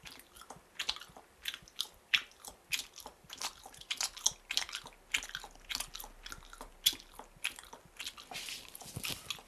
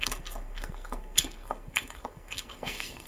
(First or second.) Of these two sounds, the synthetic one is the second